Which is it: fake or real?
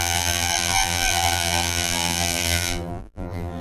fake